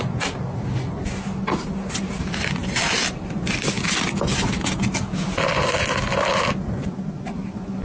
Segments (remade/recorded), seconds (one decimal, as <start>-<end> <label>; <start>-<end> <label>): 0.0-7.8 recorded